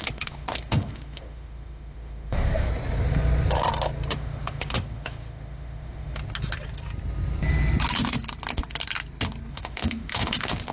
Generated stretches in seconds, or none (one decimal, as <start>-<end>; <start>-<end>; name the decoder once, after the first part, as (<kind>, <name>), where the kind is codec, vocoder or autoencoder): 0.0-2.7 (autoencoder, DAC-VAE); 4.1-6.2; 9.5-10.7